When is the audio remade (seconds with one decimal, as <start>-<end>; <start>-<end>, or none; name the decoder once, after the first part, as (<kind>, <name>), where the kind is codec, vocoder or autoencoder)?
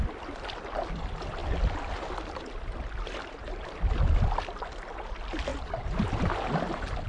none